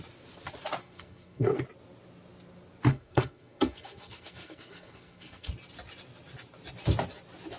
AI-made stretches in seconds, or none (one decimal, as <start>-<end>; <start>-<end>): 0.8-1.6; 2.9-5.5